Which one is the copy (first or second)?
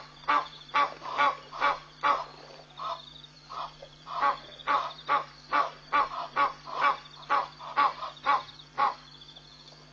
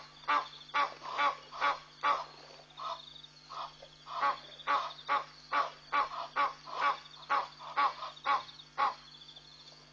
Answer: first